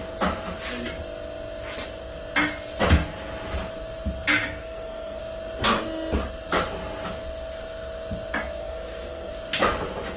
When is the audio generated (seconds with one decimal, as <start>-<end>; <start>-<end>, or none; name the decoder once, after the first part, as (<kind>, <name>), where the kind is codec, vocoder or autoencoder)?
4.6-5.2 (codec, SNAC); 8.6-9.3